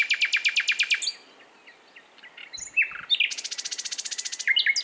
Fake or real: real